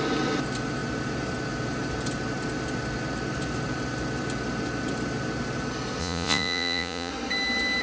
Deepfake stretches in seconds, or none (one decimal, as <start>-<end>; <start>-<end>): 6.0-7.1